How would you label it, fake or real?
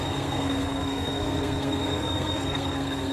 fake